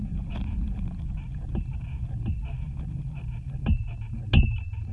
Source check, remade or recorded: recorded